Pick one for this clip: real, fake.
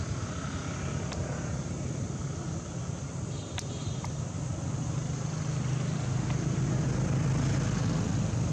real